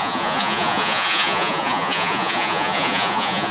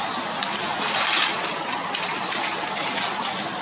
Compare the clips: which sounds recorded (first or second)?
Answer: second